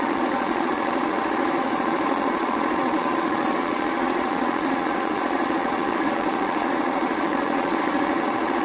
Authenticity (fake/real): fake